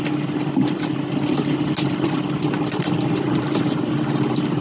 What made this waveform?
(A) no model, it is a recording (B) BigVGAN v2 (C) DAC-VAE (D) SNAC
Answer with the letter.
A